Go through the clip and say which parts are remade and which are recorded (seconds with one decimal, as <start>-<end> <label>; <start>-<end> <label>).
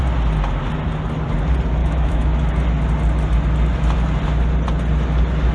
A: 0.0-1.8 recorded; 1.8-2.5 remade; 2.5-5.5 recorded